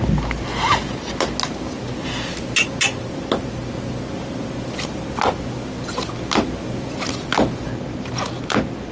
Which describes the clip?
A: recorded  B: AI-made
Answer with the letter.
A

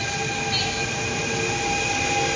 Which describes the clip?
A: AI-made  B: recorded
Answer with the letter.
B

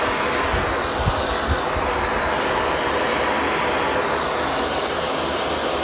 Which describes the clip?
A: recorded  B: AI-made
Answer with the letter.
A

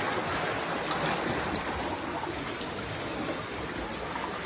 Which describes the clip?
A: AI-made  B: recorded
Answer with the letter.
B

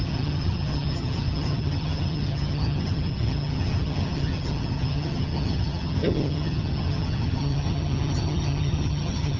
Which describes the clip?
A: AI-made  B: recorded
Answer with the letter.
A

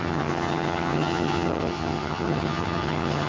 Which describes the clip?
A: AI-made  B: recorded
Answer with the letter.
A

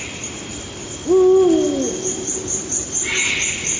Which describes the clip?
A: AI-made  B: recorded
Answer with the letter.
B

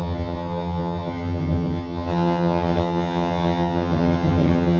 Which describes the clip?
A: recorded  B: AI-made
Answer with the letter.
B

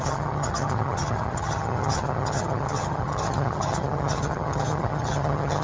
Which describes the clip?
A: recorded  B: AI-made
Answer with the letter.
B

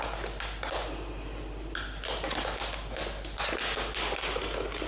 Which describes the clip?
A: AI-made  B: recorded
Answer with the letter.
B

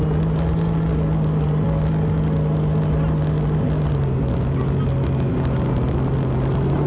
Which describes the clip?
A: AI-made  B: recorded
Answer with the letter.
B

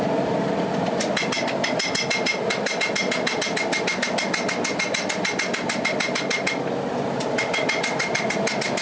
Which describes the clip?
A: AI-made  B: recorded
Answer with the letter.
B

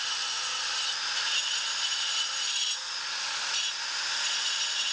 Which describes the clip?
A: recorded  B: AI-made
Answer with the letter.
A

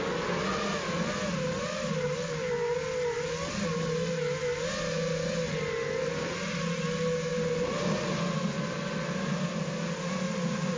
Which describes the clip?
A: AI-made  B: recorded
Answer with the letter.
B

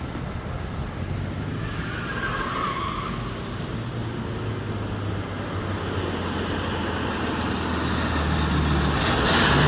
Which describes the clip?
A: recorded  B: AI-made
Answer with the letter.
A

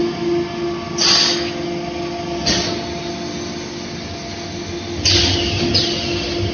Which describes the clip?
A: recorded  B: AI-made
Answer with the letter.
A